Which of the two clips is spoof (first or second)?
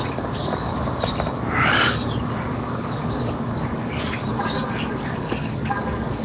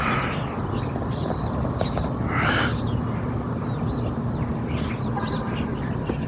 first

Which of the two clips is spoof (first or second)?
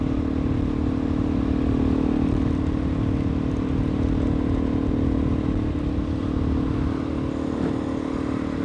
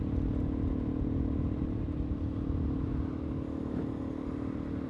second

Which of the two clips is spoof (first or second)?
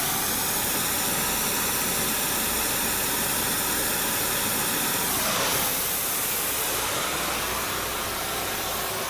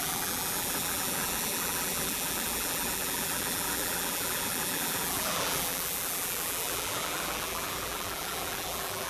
second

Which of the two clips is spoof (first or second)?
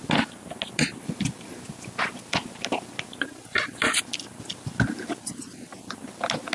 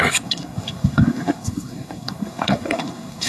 second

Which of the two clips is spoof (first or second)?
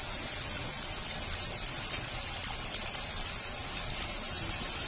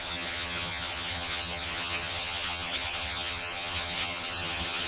second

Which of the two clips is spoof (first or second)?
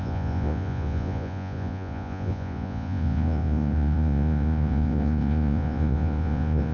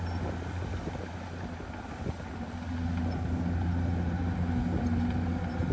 first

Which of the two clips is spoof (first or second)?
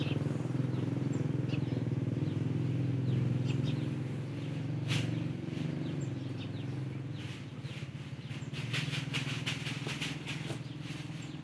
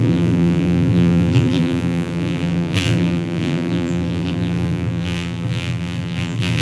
second